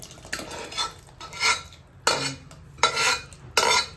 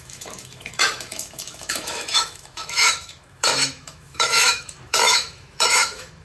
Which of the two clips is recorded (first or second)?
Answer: first